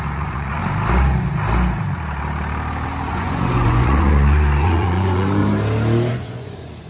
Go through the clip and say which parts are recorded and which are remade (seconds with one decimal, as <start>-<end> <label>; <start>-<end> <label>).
0.0-0.6 remade; 0.6-3.1 recorded; 3.1-5.4 remade; 5.4-6.1 recorded; 6.1-6.9 remade

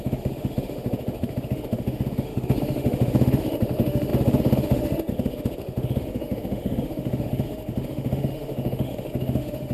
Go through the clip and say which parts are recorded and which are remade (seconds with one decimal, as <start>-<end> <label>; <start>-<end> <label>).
0.0-9.7 remade

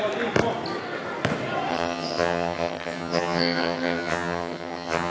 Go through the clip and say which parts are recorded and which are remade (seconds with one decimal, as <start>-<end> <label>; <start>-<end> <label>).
0.0-1.7 recorded; 1.7-5.1 remade